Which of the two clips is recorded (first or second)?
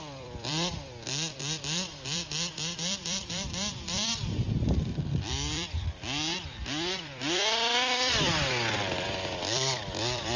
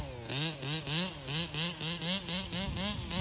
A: second